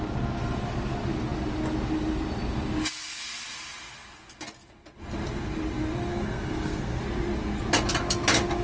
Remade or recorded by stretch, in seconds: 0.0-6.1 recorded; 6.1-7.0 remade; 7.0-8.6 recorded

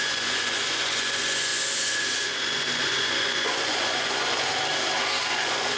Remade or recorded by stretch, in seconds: 0.0-4.5 remade; 4.5-5.2 recorded; 5.2-5.8 remade

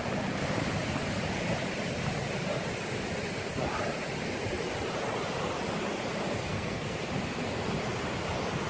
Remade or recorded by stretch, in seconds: 0.0-6.5 recorded; 6.5-7.0 remade; 7.0-8.7 recorded

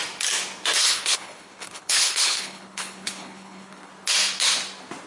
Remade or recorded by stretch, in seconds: 0.0-0.8 recorded; 0.8-3.9 remade; 3.9-5.1 recorded

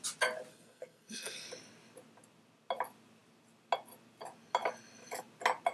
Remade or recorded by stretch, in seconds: 0.0-0.5 recorded; 0.5-1.5 remade; 1.5-5.7 recorded

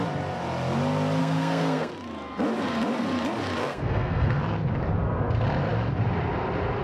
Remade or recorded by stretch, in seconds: 0.0-1.2 recorded; 1.2-1.9 remade; 1.9-3.6 recorded; 3.6-4.4 remade; 4.4-6.8 recorded

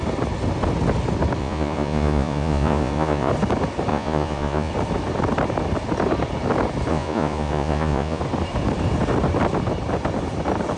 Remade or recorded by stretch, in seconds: 0.0-1.4 recorded; 1.4-3.3 remade; 3.3-3.9 recorded; 3.9-4.7 remade; 4.7-6.9 recorded; 6.9-8.2 remade; 8.2-10.8 recorded

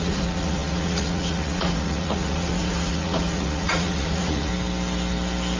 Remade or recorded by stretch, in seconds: 0.0-4.5 remade; 4.5-5.6 recorded